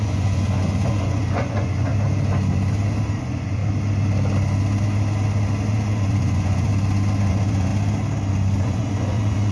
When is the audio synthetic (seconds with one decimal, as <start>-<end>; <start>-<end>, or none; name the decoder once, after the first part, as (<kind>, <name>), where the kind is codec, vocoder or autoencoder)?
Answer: 0.0-1.9 (vocoder, Vocos); 3.2-3.6; 5.7-6.7; 7.3-7.7; 8.6-9.5